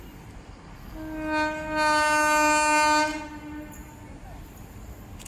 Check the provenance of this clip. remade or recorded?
recorded